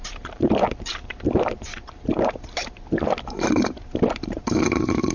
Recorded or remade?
remade